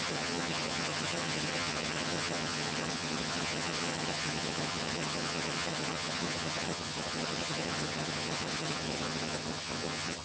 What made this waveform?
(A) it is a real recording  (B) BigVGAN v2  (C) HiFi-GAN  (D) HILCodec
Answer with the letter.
C